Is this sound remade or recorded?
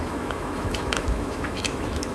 remade